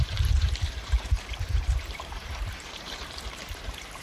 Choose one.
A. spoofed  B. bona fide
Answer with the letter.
A